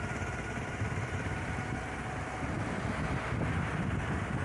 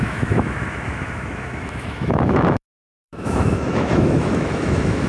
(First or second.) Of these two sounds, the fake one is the second